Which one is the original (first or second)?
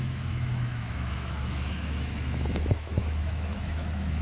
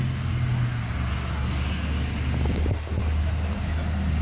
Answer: second